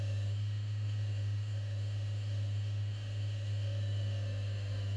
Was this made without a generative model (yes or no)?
no